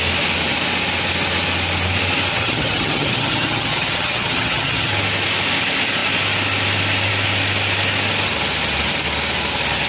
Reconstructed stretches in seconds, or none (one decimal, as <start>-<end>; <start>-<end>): 2.3-4.9